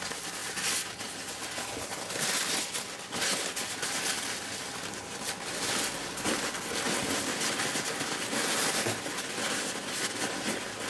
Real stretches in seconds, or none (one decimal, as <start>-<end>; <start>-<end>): 0.0-10.9